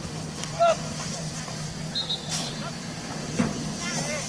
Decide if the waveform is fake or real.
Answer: fake